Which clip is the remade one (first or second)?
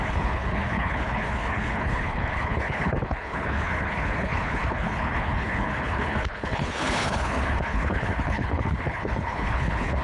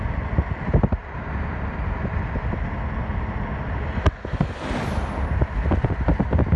first